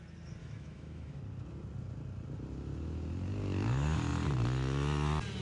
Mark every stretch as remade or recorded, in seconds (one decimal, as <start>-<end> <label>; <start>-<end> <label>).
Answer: 0.0-0.4 recorded; 0.4-1.2 remade; 1.2-5.4 recorded